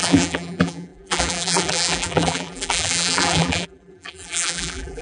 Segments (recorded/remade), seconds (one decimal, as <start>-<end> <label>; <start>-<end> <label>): 0.0-5.0 remade